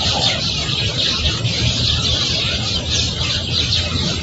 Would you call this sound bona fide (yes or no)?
no